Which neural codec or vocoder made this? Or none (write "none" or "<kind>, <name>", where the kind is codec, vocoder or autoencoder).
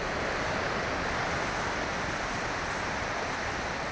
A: none